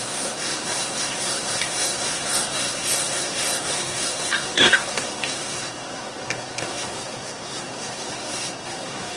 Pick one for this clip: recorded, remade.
remade